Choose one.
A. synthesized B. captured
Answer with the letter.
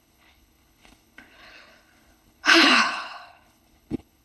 A